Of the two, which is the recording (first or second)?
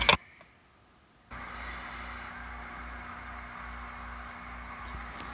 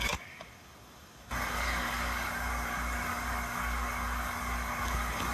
first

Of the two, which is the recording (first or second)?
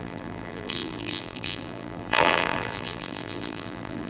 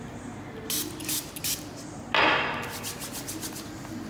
second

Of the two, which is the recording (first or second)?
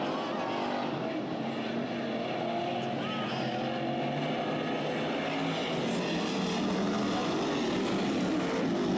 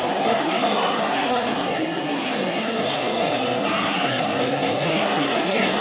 first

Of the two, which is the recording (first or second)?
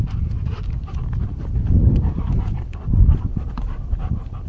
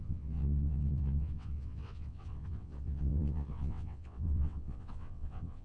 first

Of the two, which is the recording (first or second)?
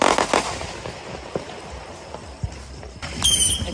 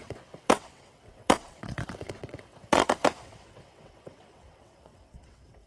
first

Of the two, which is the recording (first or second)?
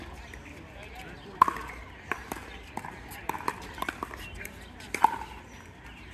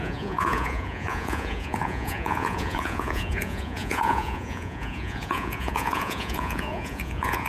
first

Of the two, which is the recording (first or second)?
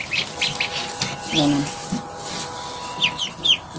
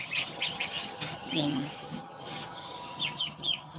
first